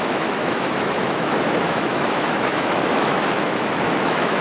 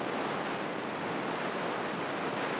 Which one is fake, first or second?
first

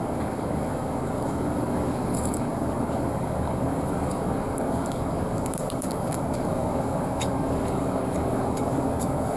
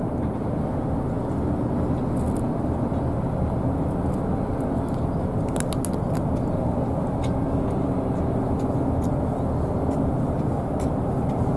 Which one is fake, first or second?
first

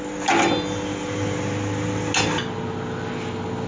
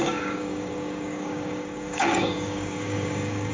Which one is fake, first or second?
second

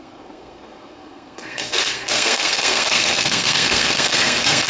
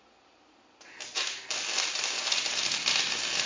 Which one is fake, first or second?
first